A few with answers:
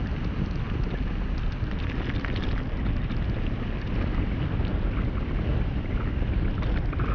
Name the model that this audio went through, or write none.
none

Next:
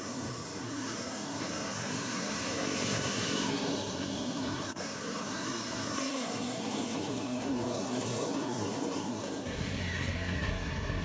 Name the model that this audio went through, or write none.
codec, SNAC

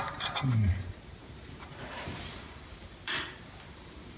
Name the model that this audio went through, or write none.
vocoder, BigVGAN v2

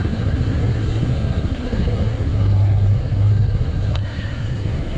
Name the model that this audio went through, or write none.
codec, SNAC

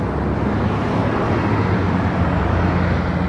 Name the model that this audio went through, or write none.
none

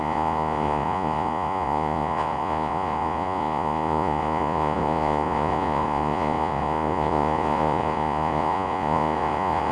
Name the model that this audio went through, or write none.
vocoder, Vocos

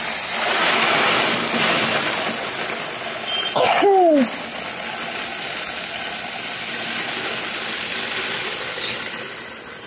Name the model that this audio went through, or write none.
none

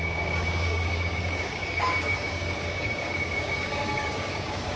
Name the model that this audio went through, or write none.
codec, DAC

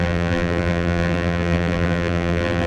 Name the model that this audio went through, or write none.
vocoder, BigVGAN v2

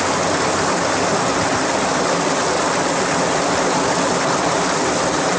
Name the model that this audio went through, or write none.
none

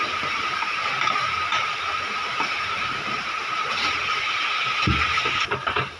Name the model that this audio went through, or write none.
vocoder, BigVGAN v2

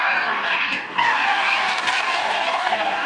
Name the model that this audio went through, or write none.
codec, DAC